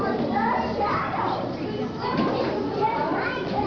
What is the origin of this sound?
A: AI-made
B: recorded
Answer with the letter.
A